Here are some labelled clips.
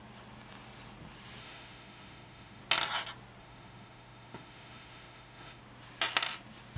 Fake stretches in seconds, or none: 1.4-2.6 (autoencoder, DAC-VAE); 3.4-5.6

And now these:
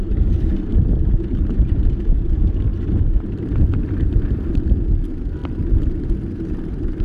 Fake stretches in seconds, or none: 0.0-0.7 (vocoder, BigVGAN v2); 1.4-5.4; 6.1-7.0

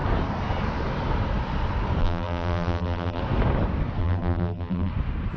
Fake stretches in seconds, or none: 2.0-3.2 (vocoder, BigVGAN v2); 4.0-4.9

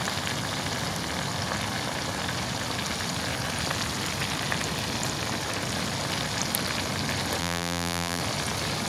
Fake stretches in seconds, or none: 7.4-8.2 (vocoder, BigVGAN v2)

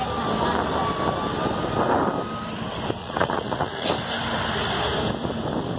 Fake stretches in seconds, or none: 3.0-3.9 (vocoder, Vocos)